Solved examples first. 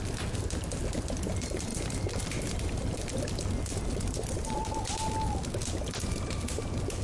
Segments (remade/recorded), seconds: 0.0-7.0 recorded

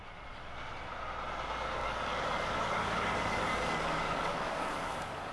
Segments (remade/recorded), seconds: 0.0-1.8 recorded; 1.8-5.3 remade

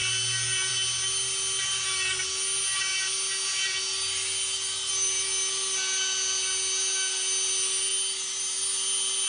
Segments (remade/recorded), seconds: 0.0-9.3 recorded

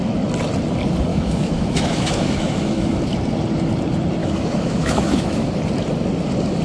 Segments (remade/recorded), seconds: 0.0-1.1 recorded; 1.1-3.0 remade; 3.0-4.2 recorded; 4.2-5.5 remade; 5.5-6.6 recorded

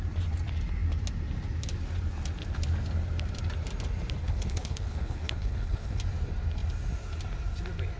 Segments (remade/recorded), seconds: 0.0-4.2 recorded; 4.2-6.0 remade; 6.0-8.0 recorded

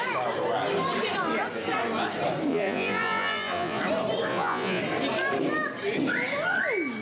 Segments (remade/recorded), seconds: 0.0-2.5 recorded; 2.5-3.8 remade; 3.8-4.3 recorded; 4.3-4.8 remade; 4.8-7.0 recorded